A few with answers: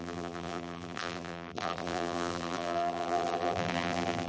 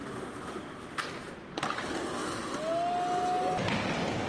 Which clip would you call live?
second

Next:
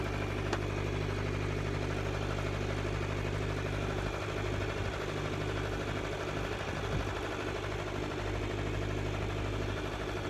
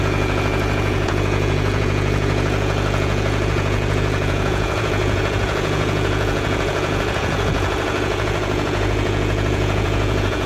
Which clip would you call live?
first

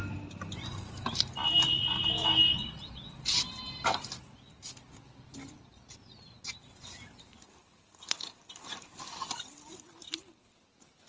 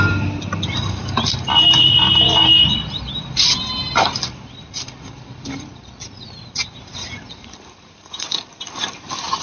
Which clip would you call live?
first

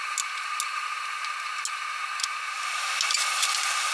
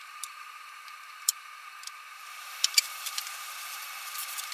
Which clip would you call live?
first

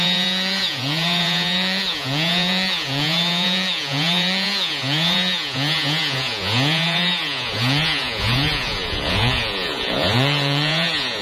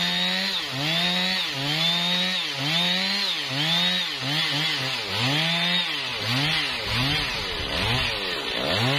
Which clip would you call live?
second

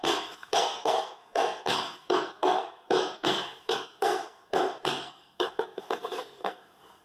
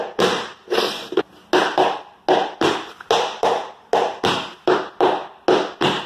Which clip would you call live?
second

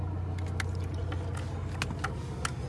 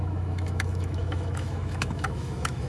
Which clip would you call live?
first